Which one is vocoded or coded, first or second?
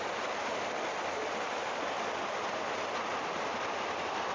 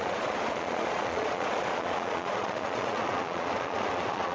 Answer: second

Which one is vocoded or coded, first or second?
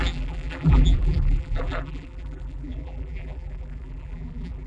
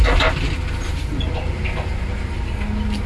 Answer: first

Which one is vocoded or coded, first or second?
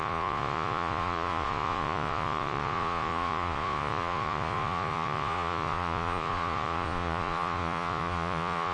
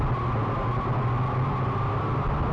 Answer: first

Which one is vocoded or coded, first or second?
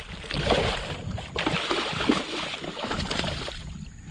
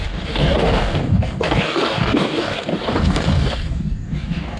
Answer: second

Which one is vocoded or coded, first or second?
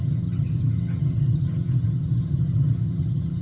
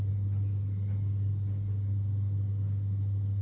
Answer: first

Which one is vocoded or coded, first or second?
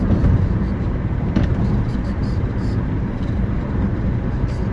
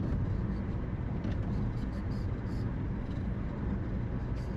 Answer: first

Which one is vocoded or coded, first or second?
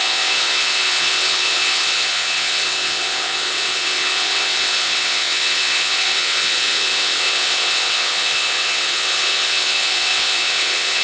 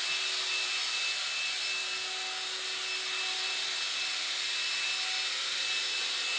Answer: first